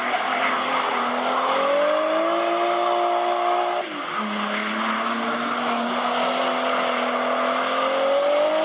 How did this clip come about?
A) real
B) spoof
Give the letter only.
A